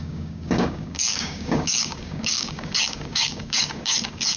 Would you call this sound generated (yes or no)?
yes